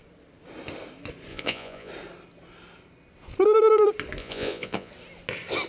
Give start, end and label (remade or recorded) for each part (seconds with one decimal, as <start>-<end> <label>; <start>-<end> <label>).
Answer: 0.0-1.3 recorded; 1.3-1.9 remade; 1.9-4.2 recorded; 4.2-4.9 remade; 4.9-5.7 recorded